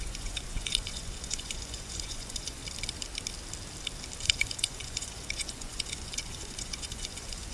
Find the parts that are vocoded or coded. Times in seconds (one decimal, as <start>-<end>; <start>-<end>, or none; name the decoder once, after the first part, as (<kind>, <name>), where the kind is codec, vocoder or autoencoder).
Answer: 0.0-2.6 (vocoder, Vocos); 4.2-7.5